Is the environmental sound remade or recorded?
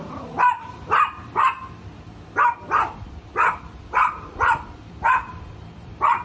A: remade